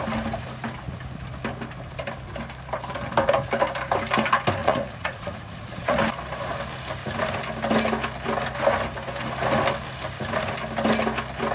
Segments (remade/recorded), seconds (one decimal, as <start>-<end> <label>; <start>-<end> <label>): 0.0-4.6 recorded; 4.6-6.0 remade; 6.0-11.5 recorded